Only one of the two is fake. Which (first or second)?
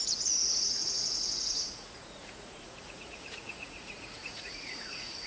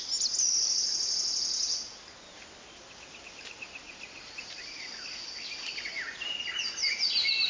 first